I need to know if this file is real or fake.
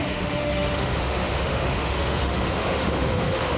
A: fake